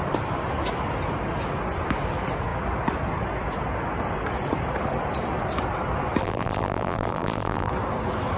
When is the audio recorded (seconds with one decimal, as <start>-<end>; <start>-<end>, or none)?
0.0-6.2; 7.7-8.4